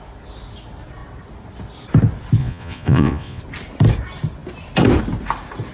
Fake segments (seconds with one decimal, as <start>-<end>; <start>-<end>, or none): 2.4-3.4